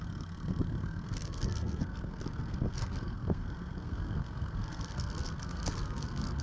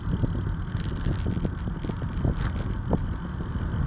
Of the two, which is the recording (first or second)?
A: second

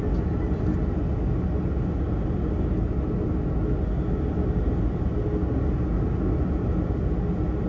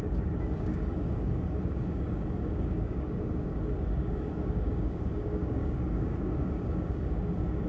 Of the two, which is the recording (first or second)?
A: first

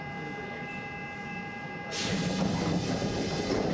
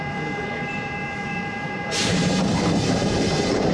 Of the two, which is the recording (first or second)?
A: first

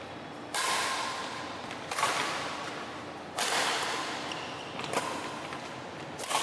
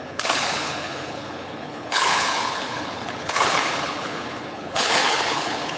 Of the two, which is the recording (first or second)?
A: first